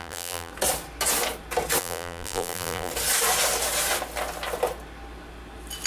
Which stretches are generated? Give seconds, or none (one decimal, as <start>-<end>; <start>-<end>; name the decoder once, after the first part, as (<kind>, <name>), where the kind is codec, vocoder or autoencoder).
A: 0.0-0.5 (vocoder, BigVGAN v2); 1.8-2.9